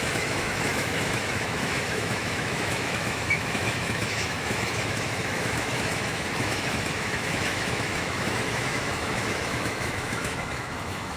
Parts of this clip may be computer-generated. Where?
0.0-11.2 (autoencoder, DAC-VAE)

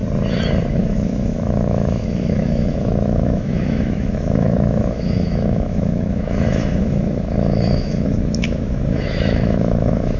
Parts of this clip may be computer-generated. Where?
0.7-10.2 (autoencoder, DAC-VAE)

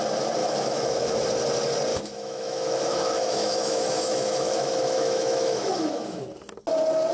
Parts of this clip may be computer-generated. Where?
0.4-1.2 (autoencoder, DAC-VAE); 1.9-6.2